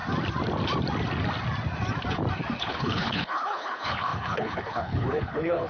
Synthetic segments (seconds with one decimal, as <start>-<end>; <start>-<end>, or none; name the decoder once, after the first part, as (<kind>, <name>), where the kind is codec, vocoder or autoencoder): 2.6-5.7 (codec, HILCodec)